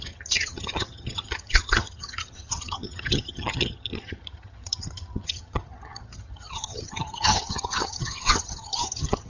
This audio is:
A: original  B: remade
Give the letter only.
B